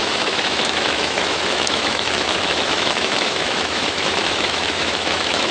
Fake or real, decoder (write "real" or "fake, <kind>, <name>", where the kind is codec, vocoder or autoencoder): fake, autoencoder, DAC-VAE